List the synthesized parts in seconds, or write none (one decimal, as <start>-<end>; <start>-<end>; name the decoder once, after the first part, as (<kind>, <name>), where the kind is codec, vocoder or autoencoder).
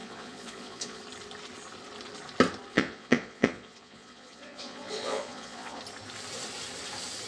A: 0.0-1.0 (vocoder, Vocos); 2.7-5.8